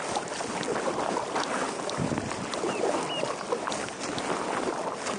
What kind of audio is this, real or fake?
real